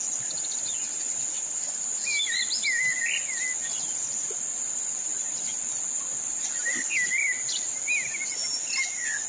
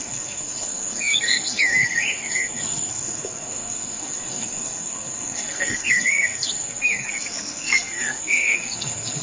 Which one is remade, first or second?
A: second